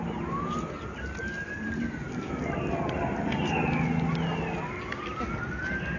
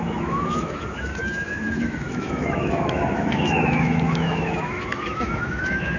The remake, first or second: second